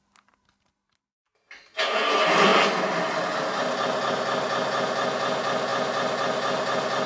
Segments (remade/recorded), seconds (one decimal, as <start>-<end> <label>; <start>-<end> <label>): 0.0-7.1 recorded